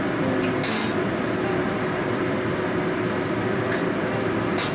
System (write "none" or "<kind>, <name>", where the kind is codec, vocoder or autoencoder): none